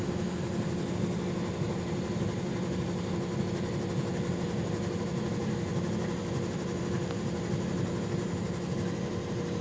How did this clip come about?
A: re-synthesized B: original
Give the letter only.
B